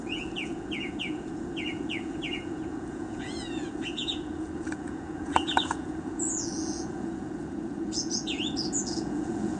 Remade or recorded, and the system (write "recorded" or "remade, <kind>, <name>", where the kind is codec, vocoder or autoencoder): remade, vocoder, Vocos